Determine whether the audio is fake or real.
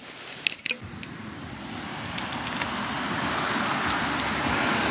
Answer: real